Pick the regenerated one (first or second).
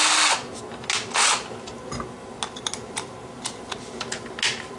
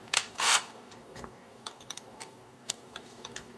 second